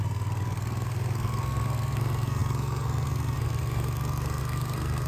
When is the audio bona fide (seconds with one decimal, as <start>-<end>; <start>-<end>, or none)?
none